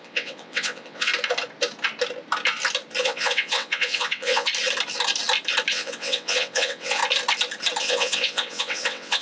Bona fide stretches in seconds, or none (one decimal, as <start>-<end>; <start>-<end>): 1.1-3.0; 4.5-5.7; 7.0-7.8